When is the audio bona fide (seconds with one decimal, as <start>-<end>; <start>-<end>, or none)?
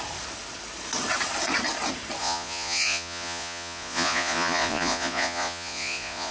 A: 0.0-2.2